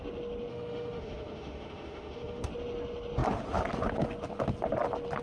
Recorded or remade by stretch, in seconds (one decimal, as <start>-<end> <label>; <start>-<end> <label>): 0.0-0.5 recorded; 0.5-2.5 remade; 2.5-5.2 recorded